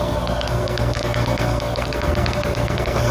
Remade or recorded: remade